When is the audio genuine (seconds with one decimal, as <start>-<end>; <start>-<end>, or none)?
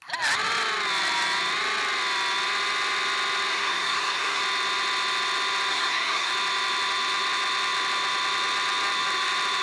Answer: 0.0-3.5; 4.4-5.7; 6.3-9.6